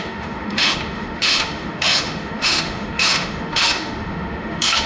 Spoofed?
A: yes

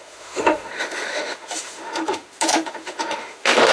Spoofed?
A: yes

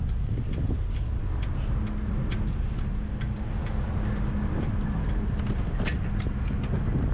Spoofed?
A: no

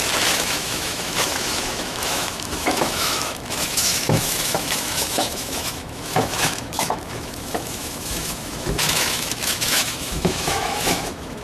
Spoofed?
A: yes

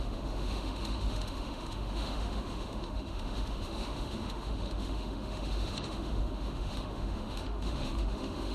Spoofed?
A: yes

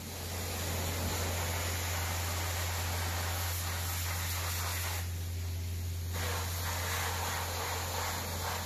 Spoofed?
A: no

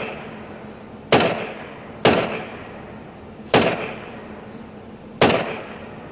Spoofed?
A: no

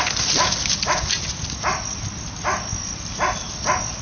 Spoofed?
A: no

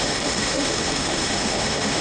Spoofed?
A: yes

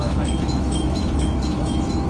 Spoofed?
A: yes